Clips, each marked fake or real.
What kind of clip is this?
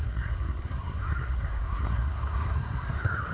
fake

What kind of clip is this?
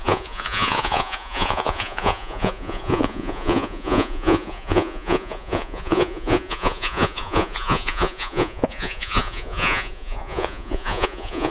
fake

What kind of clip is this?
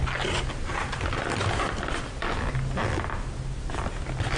real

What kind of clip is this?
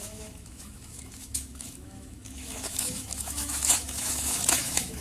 fake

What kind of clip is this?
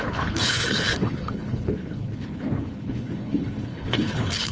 fake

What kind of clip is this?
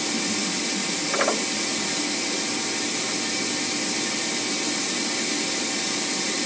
real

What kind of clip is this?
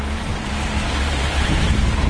fake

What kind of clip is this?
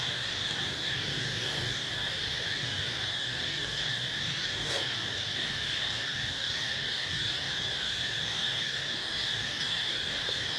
fake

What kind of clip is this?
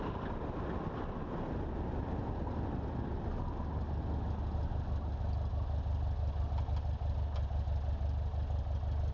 real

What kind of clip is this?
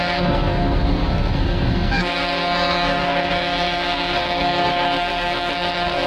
fake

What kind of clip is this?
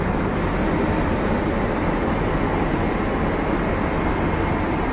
real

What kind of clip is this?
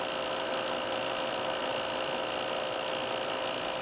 real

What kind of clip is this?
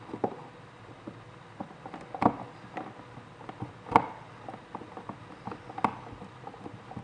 real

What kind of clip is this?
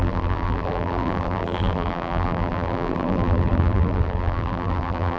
fake